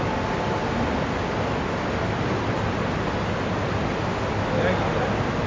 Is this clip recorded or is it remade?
recorded